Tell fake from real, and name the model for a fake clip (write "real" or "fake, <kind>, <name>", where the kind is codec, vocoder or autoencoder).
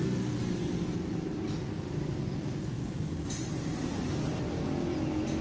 real